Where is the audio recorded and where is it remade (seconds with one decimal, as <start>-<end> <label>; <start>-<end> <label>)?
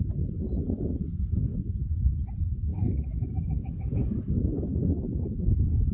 0.0-2.7 recorded; 2.7-4.3 remade; 4.3-5.9 recorded